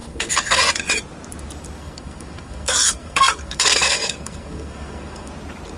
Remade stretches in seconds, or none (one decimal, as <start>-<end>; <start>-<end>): 0.0-0.6; 1.8-5.3